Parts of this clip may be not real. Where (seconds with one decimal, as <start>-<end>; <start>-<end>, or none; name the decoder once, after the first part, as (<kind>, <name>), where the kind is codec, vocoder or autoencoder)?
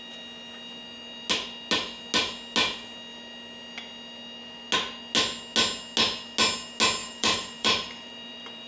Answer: 7.0-8.7 (vocoder, BigVGAN v2)